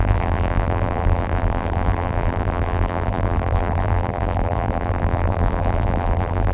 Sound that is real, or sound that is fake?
fake